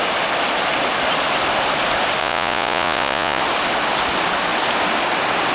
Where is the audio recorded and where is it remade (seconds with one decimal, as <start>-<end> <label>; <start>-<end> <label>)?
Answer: 0.0-2.2 recorded; 2.2-3.4 remade; 3.4-5.5 recorded